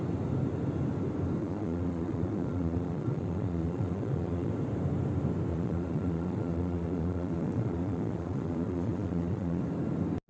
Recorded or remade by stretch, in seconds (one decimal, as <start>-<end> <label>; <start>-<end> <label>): 0.0-1.4 recorded; 1.4-4.5 remade; 4.5-5.5 recorded; 5.5-9.6 remade; 9.6-10.3 recorded